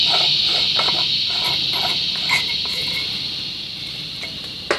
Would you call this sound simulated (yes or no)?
no